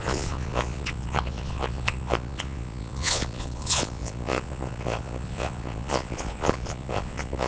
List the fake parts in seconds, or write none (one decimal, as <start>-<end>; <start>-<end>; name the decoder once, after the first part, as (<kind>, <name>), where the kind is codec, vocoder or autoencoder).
0.0-7.5 (vocoder, Vocos)